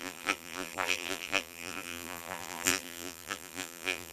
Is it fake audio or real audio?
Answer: fake